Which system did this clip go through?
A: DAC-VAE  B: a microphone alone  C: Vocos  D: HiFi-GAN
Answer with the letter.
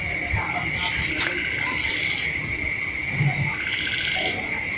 B